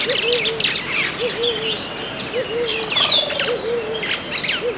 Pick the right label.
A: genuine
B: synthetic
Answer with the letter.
A